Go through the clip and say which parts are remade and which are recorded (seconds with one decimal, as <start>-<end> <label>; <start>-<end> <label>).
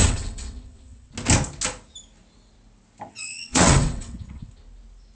0.0-1.1 remade; 1.1-3.1 recorded; 3.1-4.5 remade; 4.5-5.1 recorded